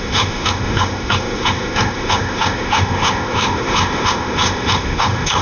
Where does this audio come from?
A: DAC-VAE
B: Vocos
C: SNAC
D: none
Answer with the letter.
A